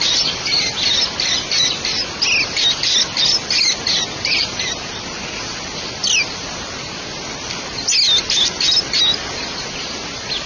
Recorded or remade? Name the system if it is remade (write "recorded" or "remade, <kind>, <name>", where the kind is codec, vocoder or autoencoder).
recorded